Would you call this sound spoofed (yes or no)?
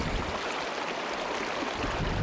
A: no